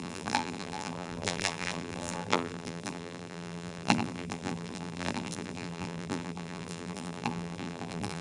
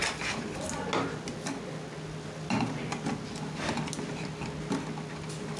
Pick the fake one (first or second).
first